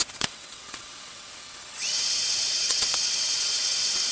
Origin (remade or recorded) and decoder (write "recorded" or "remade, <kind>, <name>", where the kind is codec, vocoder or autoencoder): remade, vocoder, WaveNeXt